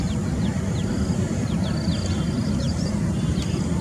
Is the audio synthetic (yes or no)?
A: yes